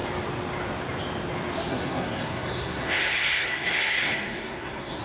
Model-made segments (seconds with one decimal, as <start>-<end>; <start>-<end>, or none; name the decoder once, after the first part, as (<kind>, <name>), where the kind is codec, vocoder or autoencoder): 1.7-5.0 (codec, SNAC)